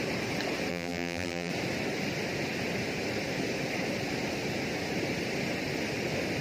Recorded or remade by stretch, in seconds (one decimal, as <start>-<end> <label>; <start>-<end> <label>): 0.0-0.7 recorded; 0.7-1.5 remade; 1.5-6.4 recorded